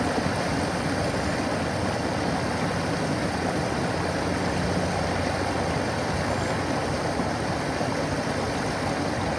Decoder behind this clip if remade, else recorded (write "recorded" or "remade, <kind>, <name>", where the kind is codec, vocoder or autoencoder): recorded